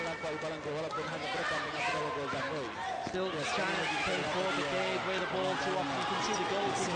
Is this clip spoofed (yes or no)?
no